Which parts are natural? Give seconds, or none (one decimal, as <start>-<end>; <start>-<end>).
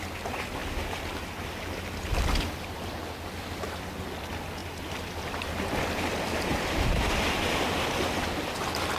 0.0-4.6; 7.3-9.0